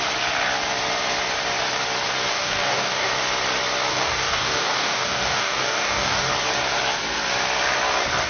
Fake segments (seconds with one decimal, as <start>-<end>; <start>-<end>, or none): 2.3-3.1; 3.9-6.3